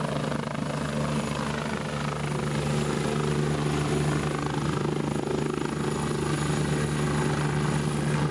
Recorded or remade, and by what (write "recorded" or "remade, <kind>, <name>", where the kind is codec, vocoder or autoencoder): recorded